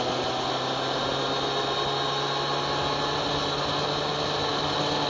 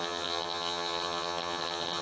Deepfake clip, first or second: second